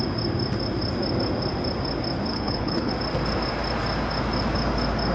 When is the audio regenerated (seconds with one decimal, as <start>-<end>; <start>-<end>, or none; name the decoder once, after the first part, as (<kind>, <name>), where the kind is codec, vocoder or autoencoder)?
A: 2.3-2.9 (codec, HILCodec)